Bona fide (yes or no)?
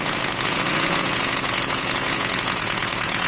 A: no